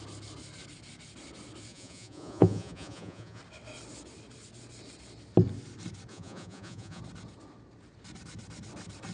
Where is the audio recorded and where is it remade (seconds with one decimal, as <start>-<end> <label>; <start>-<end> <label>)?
0.0-1.7 recorded; 1.7-3.4 remade; 3.4-6.1 recorded; 6.1-7.0 remade; 7.0-9.1 recorded